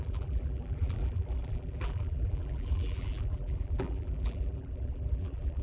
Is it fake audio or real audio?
fake